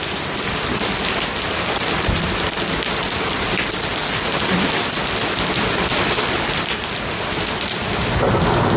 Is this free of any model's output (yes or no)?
yes